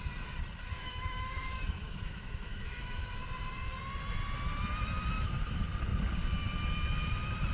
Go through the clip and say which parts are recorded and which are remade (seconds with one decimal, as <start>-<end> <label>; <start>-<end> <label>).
0.0-0.8 recorded; 0.8-3.1 remade; 3.1-7.5 recorded